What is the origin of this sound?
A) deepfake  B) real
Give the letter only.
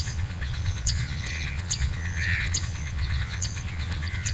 A